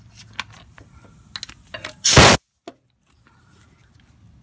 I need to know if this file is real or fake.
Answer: real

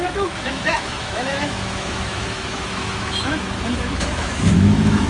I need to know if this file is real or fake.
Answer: fake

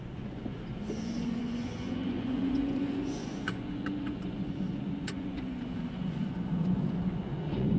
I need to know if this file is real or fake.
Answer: fake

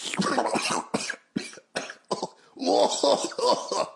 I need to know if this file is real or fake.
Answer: real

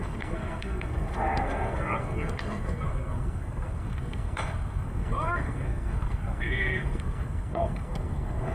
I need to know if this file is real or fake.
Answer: fake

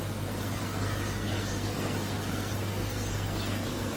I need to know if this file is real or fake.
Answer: fake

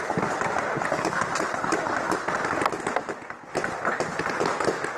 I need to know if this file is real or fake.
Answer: real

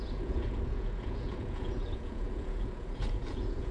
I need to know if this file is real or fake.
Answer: fake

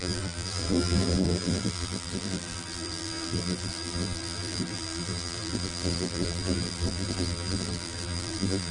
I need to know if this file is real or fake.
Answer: fake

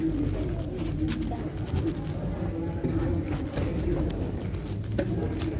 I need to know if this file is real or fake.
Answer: real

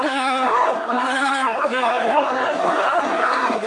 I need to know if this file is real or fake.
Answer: fake